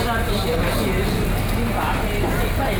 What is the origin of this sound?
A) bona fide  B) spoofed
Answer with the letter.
A